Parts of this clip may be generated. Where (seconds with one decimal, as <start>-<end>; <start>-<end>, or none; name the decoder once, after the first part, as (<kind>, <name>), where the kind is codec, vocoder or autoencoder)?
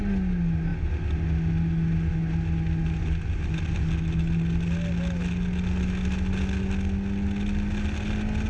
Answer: none